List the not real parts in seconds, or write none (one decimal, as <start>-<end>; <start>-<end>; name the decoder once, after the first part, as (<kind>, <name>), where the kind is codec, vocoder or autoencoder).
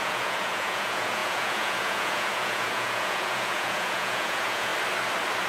0.0-4.7 (vocoder, Vocos)